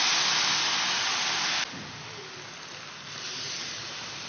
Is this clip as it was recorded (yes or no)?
yes